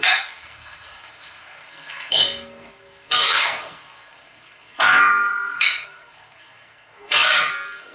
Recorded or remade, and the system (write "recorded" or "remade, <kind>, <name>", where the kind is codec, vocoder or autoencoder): remade, codec, SNAC